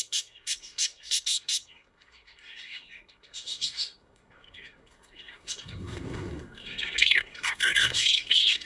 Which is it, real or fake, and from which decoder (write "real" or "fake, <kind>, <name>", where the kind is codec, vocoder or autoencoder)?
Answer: fake, codec, SNAC